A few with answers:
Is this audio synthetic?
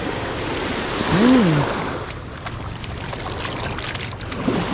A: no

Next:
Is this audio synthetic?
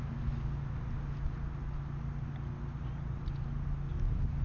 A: no